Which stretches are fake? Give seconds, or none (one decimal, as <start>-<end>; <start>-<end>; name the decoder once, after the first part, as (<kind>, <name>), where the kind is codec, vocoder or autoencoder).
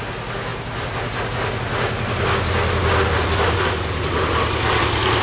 none